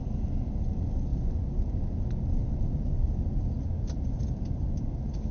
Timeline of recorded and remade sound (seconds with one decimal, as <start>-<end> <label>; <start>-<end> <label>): 0.0-5.3 recorded